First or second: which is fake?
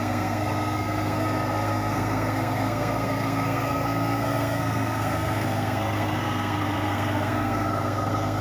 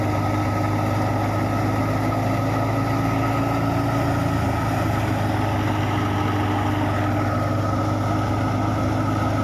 first